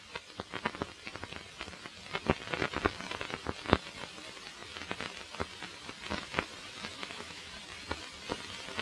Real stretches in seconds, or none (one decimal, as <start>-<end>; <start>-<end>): 0.0-7.0; 7.5-8.8